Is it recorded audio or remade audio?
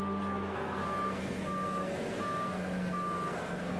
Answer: remade